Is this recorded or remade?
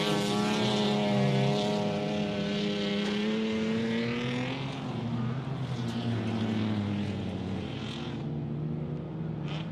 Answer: recorded